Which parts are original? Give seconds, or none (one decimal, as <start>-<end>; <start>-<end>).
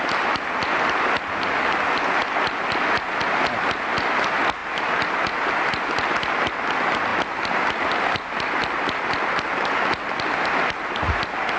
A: 0.0-11.6